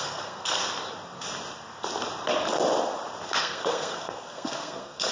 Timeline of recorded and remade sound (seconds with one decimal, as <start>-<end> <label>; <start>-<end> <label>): 0.0-0.6 remade; 0.6-3.4 recorded; 3.4-5.1 remade